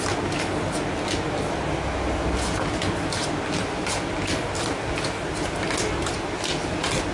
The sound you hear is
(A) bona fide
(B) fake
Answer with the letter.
A